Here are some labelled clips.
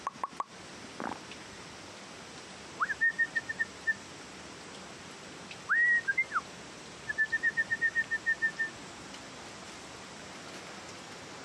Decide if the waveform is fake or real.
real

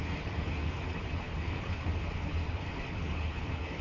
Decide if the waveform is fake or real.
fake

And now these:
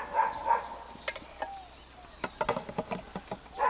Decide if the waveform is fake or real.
real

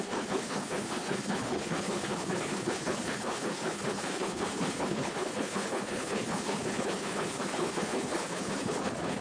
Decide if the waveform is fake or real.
fake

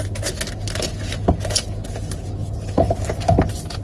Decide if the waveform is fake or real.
real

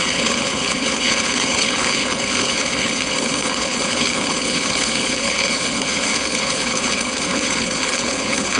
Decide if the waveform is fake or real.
fake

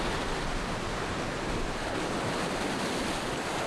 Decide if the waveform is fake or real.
real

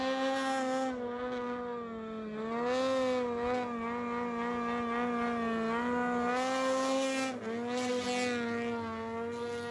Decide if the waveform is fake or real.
real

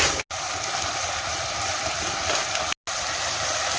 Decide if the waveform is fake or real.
real